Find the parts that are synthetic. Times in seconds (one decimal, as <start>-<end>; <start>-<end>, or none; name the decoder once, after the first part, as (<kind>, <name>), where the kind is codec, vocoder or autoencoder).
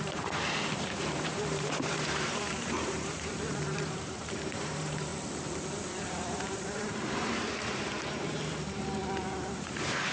0.0-5.1 (vocoder, BigVGAN v2); 6.1-9.0; 9.5-10.1